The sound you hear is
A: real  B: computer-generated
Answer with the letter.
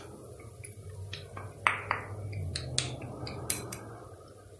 A